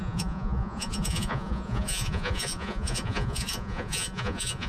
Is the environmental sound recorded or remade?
remade